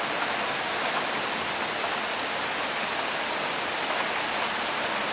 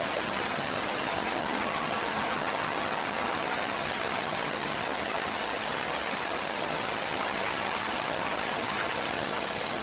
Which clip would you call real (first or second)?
first